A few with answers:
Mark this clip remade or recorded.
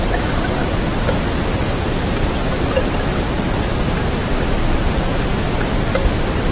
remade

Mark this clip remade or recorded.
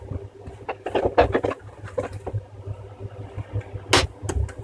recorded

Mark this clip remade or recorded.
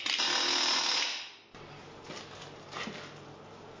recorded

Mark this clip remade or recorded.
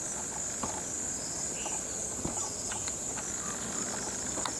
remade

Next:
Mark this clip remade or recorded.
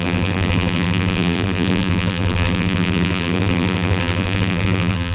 remade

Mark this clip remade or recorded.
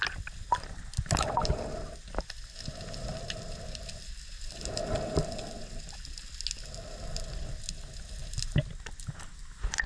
recorded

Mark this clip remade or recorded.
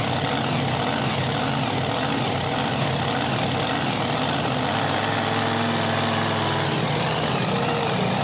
recorded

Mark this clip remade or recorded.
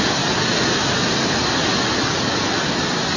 recorded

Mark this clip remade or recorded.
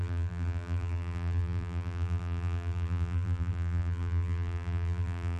remade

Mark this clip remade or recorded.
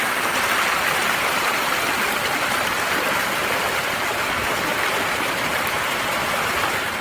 recorded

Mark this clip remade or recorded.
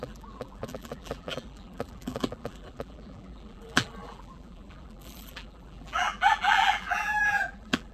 remade